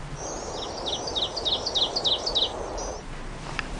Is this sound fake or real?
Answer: real